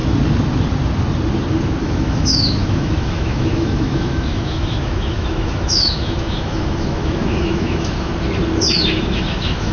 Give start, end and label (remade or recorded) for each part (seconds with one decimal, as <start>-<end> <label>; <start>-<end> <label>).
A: 0.0-1.8 recorded; 1.8-8.1 remade; 8.1-9.0 recorded; 9.0-9.7 remade

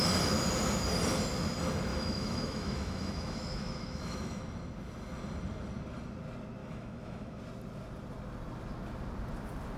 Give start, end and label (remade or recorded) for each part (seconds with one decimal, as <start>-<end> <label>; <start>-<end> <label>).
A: 0.0-1.9 recorded; 1.9-4.4 remade; 4.4-6.6 recorded; 6.6-7.4 remade; 7.4-9.8 recorded

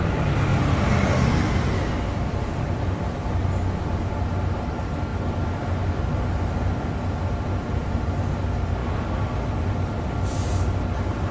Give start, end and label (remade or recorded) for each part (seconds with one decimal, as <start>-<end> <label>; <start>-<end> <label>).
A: 0.0-11.3 recorded

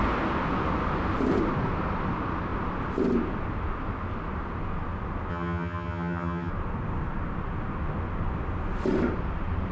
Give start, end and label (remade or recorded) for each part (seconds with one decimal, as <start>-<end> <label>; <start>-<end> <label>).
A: 0.0-5.3 recorded; 5.3-6.5 remade; 6.5-9.7 recorded

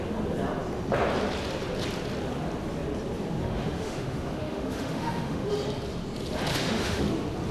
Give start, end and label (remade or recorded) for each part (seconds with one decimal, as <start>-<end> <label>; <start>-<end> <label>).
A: 0.0-3.4 recorded; 3.4-5.5 remade; 5.5-6.5 recorded; 6.5-7.0 remade; 7.0-7.5 recorded